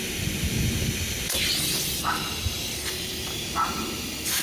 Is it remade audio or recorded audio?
remade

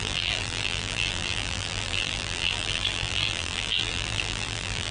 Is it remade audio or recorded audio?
remade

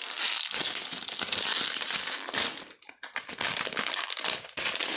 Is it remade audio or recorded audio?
remade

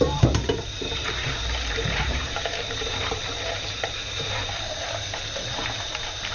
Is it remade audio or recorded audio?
remade